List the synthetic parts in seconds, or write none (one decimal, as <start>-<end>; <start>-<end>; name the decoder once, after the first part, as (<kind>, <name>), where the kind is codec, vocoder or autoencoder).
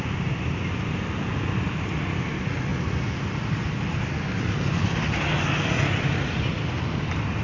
none